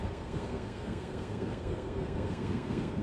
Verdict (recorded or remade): remade